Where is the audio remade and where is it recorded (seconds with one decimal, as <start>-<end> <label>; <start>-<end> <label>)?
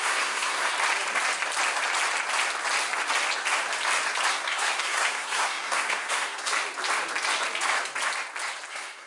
0.0-0.7 remade; 0.7-4.3 recorded; 4.3-6.5 remade; 6.5-8.7 recorded; 8.7-9.1 remade